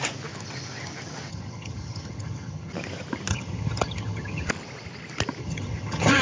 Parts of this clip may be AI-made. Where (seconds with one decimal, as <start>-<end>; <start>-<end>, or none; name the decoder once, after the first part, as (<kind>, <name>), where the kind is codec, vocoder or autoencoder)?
1.3-2.7 (vocoder, HiFi-GAN); 3.3-4.5; 5.4-6.2